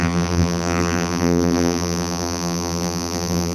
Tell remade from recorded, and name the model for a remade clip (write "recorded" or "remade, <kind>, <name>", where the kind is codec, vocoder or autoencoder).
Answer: remade, vocoder, BigVGAN v2